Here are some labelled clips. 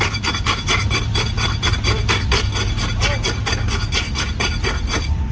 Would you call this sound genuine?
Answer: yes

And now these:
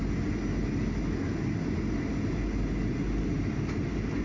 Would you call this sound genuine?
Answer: yes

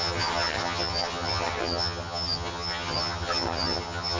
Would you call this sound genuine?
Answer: no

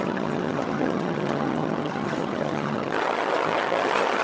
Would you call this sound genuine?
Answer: no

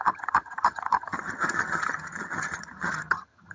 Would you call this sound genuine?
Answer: no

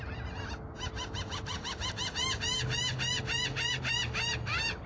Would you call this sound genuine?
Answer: yes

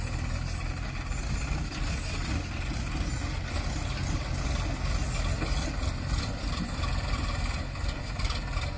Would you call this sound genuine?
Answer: yes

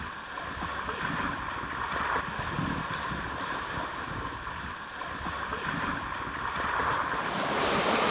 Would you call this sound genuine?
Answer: yes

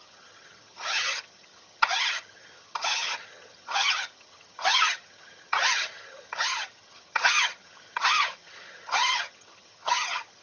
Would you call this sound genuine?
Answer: no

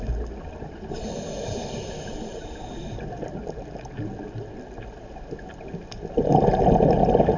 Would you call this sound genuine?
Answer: yes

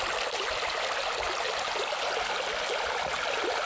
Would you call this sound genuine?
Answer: yes